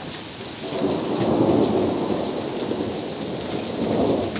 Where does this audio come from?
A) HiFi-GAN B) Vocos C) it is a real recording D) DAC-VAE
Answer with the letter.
C